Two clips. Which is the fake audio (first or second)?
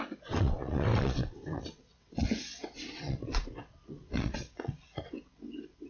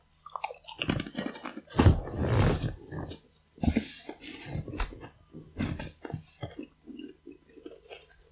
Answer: first